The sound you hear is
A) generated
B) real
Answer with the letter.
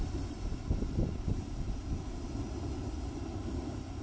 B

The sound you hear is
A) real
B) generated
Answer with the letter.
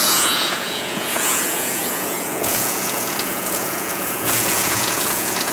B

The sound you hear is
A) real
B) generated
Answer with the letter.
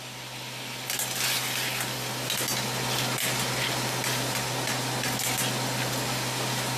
A